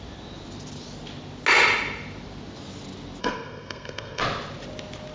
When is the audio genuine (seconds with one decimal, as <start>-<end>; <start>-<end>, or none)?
0.0-3.2; 4.2-5.1